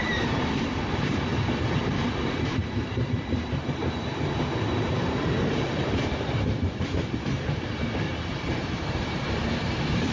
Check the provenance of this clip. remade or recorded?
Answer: remade